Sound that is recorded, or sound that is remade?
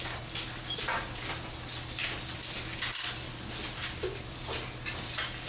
recorded